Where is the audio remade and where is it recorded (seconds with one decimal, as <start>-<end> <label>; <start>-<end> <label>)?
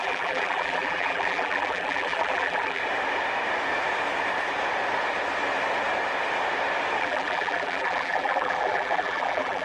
0.0-2.8 remade; 2.8-7.0 recorded; 7.0-9.6 remade